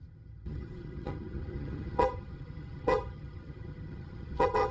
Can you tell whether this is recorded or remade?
remade